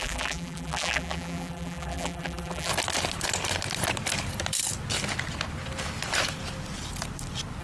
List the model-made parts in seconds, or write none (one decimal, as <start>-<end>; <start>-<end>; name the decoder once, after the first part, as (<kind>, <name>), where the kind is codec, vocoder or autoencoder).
0.0-2.7 (vocoder, BigVGAN v2)